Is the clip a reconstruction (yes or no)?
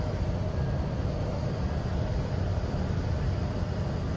yes